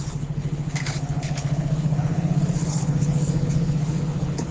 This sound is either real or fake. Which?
fake